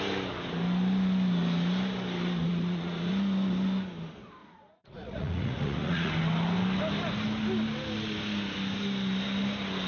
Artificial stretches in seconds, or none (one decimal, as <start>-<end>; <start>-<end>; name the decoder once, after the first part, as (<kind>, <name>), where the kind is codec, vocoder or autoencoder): 2.5-3.1 (vocoder, Vocos); 4.4-6.1